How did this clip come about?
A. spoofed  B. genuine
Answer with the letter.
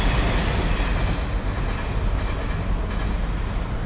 B